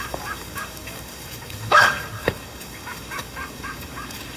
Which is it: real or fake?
fake